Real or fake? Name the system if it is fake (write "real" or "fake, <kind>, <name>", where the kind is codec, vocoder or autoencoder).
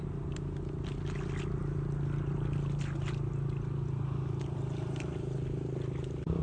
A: real